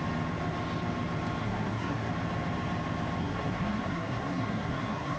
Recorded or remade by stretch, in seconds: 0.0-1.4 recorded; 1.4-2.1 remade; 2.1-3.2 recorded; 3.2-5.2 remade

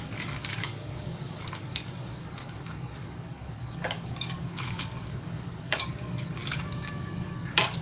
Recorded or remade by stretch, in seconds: 0.0-7.8 remade